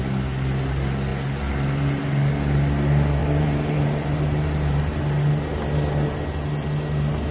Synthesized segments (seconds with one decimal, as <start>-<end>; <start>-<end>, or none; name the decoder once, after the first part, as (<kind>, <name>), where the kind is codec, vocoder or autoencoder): 3.2-5.0 (vocoder, BigVGAN v2)